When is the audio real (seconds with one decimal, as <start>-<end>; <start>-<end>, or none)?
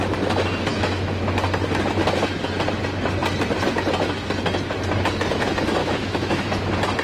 0.0-0.7; 1.2-5.8; 6.4-7.0